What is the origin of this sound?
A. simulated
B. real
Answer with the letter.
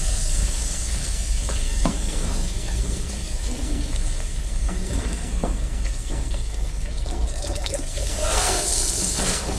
A